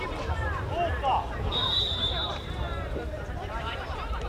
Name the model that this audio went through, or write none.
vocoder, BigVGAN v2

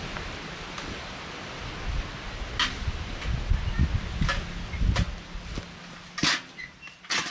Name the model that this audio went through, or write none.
none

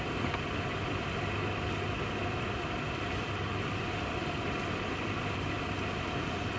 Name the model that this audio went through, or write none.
none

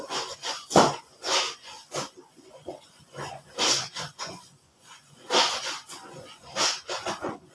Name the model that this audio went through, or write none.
vocoder, Vocos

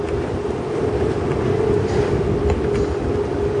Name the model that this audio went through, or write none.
none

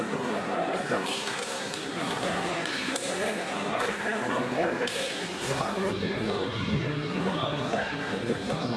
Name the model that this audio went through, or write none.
codec, SNAC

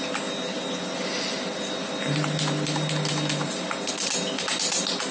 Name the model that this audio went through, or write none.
none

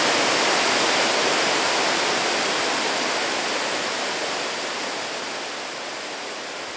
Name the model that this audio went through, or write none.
none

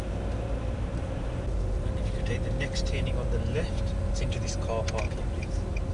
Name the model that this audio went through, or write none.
none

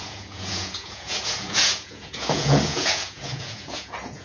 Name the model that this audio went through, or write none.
vocoder, Vocos